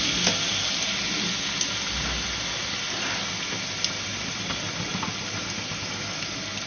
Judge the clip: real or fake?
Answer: real